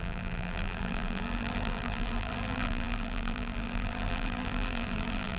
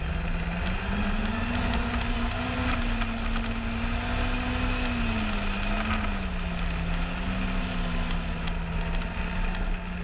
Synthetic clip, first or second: first